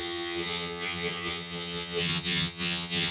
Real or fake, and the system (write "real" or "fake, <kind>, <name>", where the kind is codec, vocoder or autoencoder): fake, vocoder, HiFi-GAN